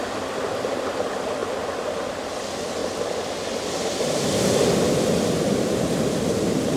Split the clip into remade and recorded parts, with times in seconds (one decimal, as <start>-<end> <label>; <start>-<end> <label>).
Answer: 0.0-6.8 recorded